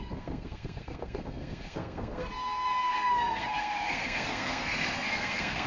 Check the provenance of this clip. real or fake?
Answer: fake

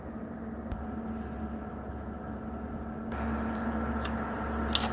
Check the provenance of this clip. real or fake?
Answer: real